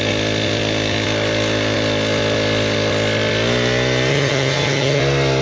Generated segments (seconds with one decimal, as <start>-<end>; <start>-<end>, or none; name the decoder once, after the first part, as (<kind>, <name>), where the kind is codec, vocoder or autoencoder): 4.1-5.0 (vocoder, HiFi-GAN)